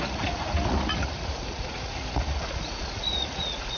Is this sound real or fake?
fake